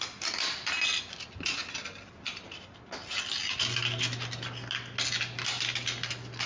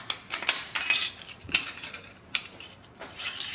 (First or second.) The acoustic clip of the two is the first